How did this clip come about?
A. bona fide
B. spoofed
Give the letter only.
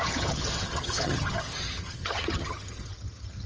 B